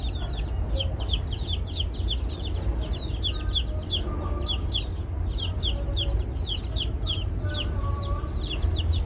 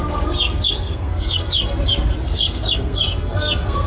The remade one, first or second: second